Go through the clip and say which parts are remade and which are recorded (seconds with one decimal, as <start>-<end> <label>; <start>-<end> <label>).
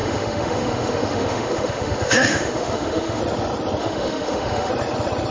0.0-3.2 remade; 3.2-3.8 recorded; 3.8-4.7 remade; 4.7-5.3 recorded